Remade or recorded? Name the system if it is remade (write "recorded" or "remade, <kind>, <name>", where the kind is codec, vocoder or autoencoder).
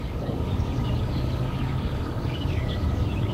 remade, codec, DAC